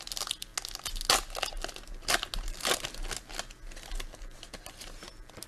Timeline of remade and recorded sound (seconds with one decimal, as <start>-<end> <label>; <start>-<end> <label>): 0.0-5.5 recorded